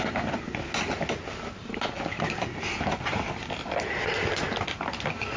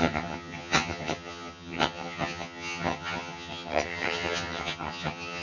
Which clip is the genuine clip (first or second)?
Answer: first